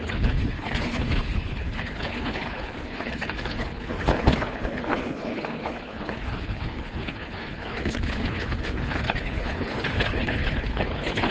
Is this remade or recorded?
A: remade